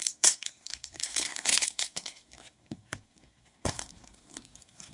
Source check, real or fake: fake